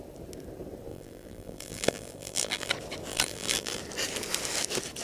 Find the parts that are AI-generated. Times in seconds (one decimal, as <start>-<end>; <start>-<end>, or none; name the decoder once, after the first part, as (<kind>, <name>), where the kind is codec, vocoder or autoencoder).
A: 0.9-2.7 (vocoder, BigVGAN v2); 3.1-3.8